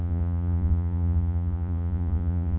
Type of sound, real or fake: fake